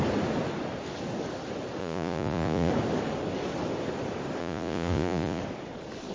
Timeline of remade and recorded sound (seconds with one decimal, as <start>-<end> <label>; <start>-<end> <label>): 0.0-1.8 recorded; 1.8-2.7 remade; 2.7-4.4 recorded; 4.4-5.4 remade; 5.4-6.1 recorded

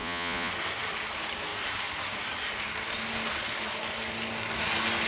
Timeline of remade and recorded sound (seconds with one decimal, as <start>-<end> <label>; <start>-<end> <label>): 0.0-0.5 remade; 0.5-5.1 recorded

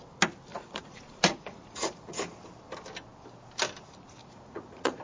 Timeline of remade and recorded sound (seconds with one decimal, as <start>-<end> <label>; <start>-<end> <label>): 0.0-0.5 recorded; 0.5-2.2 remade; 2.2-4.2 recorded; 4.2-5.0 remade

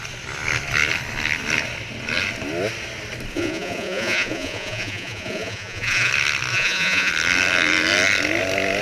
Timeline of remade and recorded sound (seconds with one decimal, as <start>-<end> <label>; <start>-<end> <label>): 0.0-3.3 recorded; 3.3-6.1 remade; 6.1-6.5 recorded; 6.5-7.1 remade; 7.1-8.8 recorded

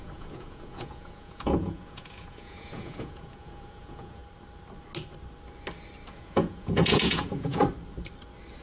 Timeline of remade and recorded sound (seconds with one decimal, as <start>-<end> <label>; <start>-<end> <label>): 0.0-4.2 remade; 4.2-6.1 recorded; 6.1-7.6 remade; 7.6-8.6 recorded

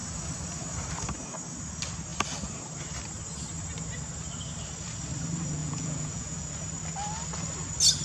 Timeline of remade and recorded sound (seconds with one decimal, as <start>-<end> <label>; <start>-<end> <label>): 0.0-5.6 recorded; 5.6-6.4 remade; 6.4-8.0 recorded